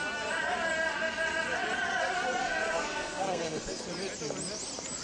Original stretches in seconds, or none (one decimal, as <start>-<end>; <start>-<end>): 0.0-2.4; 3.8-5.0